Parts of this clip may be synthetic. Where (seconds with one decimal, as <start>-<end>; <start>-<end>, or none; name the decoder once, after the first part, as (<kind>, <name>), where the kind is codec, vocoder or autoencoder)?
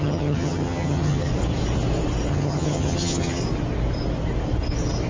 0.0-1.3 (vocoder, HiFi-GAN); 2.3-3.4